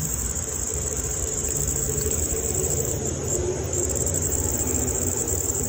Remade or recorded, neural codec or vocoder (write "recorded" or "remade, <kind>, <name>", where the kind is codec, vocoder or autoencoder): remade, vocoder, BigVGAN v2